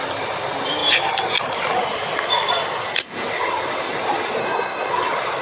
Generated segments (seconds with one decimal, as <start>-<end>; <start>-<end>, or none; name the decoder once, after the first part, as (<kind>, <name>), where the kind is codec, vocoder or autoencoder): 4.4-4.9 (codec, SNAC)